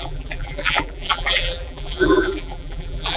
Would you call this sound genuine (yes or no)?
no